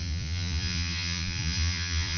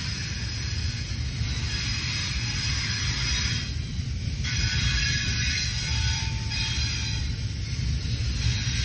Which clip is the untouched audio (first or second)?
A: second